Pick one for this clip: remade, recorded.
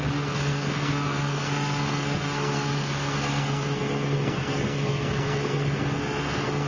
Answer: remade